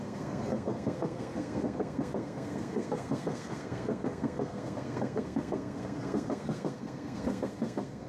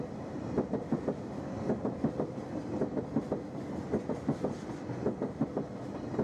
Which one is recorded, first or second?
second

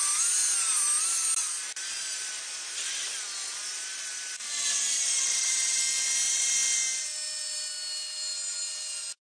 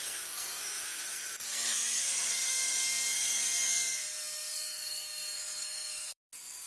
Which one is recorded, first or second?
first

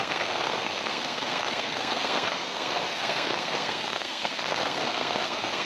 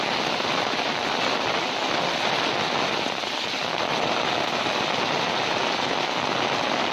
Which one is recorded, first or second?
second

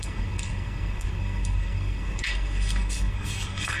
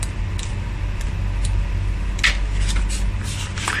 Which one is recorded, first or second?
second